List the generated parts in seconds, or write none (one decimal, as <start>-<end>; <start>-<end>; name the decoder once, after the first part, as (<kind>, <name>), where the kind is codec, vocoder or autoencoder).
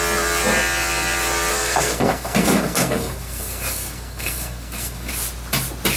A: 1.5-5.1 (codec, SNAC)